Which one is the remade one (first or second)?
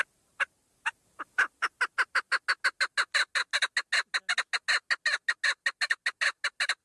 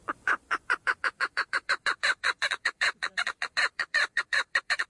second